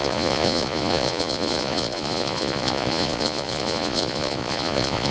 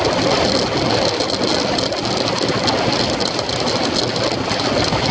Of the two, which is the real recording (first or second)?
second